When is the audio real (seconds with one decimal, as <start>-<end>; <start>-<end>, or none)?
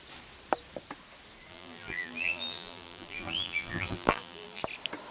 0.0-1.5; 4.6-5.1